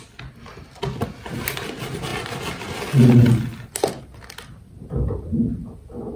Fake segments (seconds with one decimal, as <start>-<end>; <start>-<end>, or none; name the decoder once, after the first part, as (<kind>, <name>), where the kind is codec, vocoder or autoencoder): none

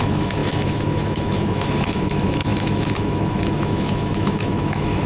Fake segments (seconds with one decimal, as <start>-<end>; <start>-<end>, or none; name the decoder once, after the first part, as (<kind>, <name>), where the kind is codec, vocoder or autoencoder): 0.0-5.1 (autoencoder, DAC-VAE)

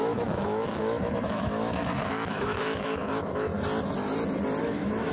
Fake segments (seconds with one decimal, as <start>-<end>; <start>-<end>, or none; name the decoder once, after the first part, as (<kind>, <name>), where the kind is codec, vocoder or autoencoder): 0.0-3.5 (autoencoder, DAC-VAE); 4.6-5.1

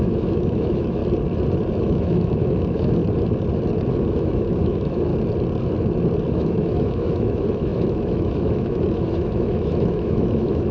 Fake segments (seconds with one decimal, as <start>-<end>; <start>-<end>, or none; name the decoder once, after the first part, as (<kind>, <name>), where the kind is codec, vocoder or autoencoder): 0.0-1.0 (autoencoder, DAC-VAE); 1.8-3.0; 3.9-5.1; 6.3-10.7